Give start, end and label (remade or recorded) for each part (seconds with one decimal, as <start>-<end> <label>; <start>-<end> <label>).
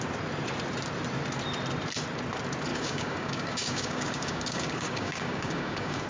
0.0-2.7 recorded; 2.7-6.1 remade